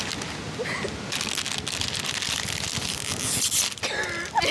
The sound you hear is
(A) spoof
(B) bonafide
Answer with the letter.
B